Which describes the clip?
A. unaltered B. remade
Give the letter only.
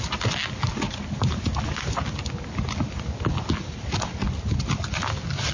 A